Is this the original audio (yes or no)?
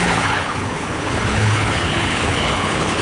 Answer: no